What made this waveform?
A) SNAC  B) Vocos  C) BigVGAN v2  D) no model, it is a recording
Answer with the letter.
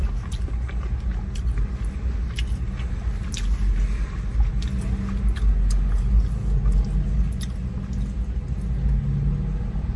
D